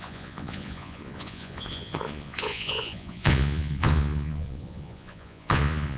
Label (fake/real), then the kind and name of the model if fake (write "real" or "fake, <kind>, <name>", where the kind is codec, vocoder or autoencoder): fake, vocoder, Vocos